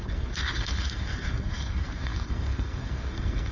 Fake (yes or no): yes